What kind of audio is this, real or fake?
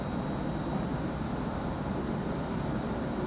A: real